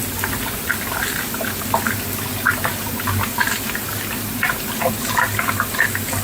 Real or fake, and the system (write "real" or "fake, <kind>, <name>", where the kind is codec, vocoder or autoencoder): real